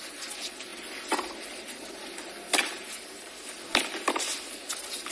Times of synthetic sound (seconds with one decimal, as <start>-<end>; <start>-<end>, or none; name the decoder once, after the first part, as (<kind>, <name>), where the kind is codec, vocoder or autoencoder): none